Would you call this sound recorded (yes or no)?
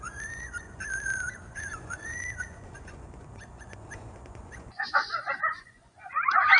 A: no